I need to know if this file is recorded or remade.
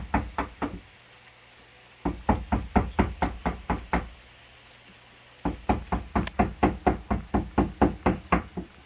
recorded